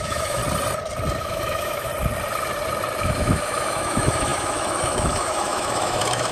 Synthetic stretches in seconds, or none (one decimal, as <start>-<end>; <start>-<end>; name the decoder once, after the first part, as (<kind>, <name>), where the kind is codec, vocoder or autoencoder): 0.0-0.4 (autoencoder, DAC-VAE); 1.2-1.9; 3.0-6.3